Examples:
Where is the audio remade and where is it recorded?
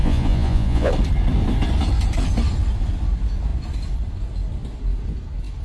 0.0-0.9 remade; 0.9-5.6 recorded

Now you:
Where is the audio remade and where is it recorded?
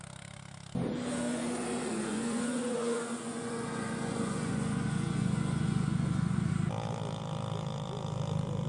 0.0-1.3 recorded; 1.3-6.5 remade; 6.5-8.7 recorded